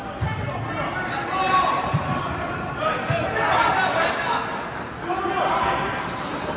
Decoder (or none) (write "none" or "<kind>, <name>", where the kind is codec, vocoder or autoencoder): none